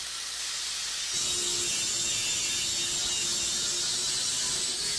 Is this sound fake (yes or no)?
no